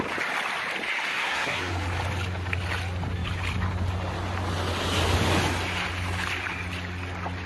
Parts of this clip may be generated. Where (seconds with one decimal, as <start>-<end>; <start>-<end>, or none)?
1.1-1.7